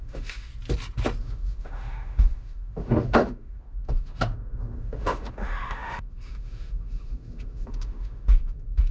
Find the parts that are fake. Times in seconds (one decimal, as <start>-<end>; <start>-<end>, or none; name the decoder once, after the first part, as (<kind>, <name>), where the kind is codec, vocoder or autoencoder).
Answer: 0.0-0.5 (autoencoder, DAC-VAE); 1.2-8.9